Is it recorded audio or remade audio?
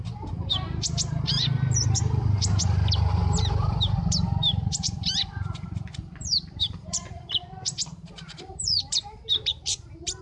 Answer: remade